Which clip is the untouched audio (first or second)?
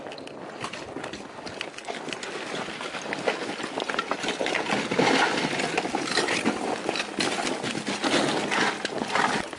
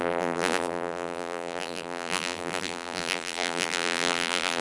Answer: first